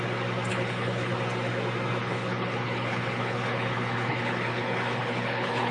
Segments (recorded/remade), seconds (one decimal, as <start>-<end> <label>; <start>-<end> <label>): 0.0-0.5 recorded; 0.5-1.1 remade; 1.1-2.0 recorded; 2.0-5.7 remade